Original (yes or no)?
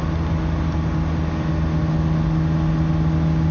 yes